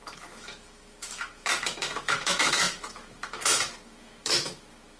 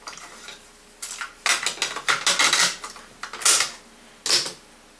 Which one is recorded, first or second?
second